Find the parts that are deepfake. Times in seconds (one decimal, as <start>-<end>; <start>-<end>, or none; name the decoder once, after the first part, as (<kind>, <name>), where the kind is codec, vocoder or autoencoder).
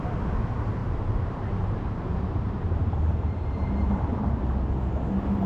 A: 0.8-4.1 (vocoder, BigVGAN v2)